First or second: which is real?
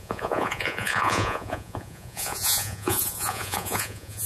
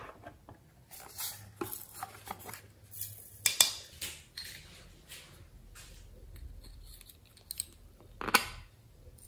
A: second